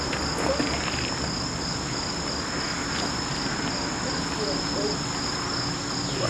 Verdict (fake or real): real